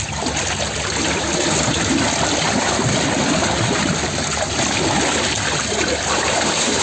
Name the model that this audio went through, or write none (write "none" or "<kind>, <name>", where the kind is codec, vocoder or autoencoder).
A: none